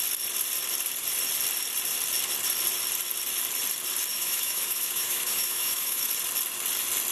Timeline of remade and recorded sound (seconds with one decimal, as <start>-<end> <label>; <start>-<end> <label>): 0.0-4.1 recorded; 4.1-6.1 remade; 6.1-7.1 recorded